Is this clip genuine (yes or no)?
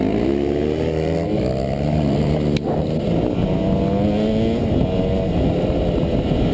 yes